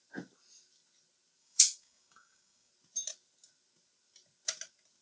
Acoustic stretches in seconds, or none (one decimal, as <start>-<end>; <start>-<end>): 0.0-1.4; 2.7-5.0